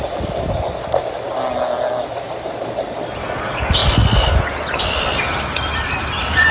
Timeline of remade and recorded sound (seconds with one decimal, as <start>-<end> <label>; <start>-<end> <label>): 0.0-6.5 recorded